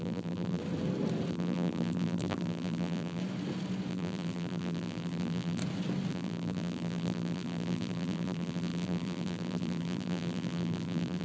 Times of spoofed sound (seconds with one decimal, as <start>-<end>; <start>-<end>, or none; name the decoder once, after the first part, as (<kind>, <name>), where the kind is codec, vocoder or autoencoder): 0.0-0.6 (vocoder, BigVGAN v2); 1.3-3.2; 3.9-5.6; 6.1-11.2